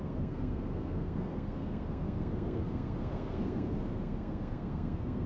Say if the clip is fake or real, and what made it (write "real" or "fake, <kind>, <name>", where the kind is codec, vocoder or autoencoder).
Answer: fake, codec, SNAC